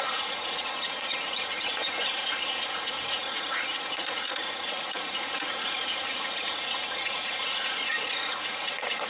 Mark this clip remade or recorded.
remade